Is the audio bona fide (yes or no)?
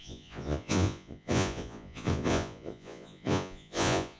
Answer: no